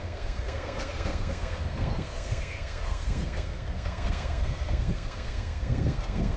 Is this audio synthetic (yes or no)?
yes